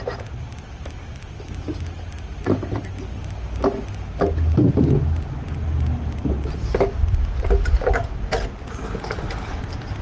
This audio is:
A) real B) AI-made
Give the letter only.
A